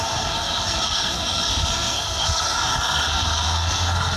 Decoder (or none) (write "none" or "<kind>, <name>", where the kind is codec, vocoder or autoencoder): codec, SNAC